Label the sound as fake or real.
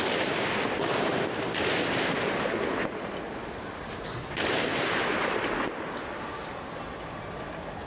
real